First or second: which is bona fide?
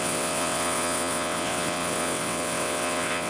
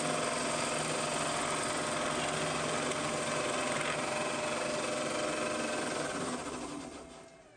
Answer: second